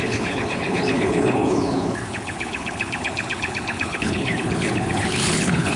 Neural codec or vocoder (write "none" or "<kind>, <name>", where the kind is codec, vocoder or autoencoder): codec, HILCodec